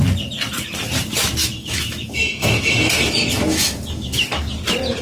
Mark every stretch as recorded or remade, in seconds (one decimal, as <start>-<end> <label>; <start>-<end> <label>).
0.0-1.4 recorded; 1.4-4.4 remade; 4.4-5.0 recorded